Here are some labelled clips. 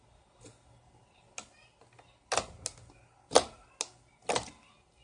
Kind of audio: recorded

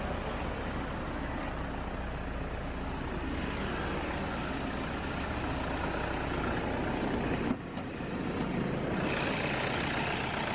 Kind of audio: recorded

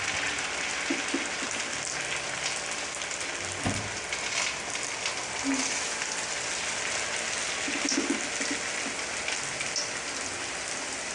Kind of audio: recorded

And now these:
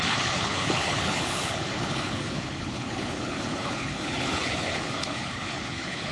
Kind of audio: remade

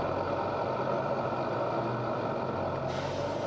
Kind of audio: recorded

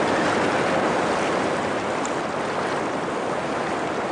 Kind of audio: recorded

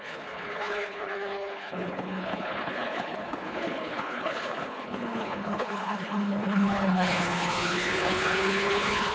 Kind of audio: remade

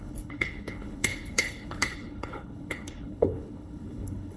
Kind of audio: remade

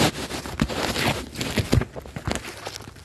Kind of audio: recorded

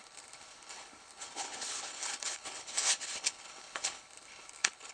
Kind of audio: remade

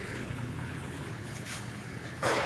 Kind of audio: remade